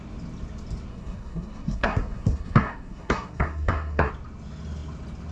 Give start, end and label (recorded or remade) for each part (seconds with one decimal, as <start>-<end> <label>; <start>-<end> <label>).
0.0-0.9 recorded; 0.9-4.1 remade; 4.1-5.3 recorded